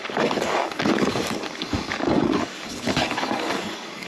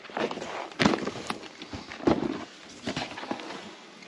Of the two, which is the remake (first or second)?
first